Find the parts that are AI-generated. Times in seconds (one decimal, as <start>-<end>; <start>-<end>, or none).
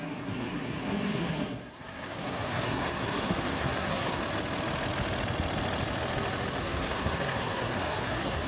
0.0-4.2; 6.6-8.5